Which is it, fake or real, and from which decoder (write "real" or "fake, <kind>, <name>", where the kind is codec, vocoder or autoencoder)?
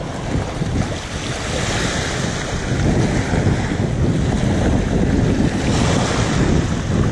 real